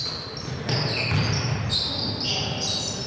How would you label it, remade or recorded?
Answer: recorded